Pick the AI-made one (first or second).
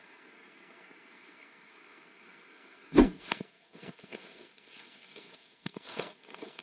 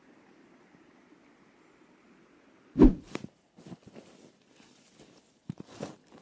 first